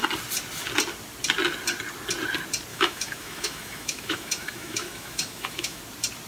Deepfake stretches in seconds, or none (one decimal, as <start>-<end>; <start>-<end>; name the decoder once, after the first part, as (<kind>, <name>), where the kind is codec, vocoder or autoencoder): 2.7-5.8 (autoencoder, DAC-VAE)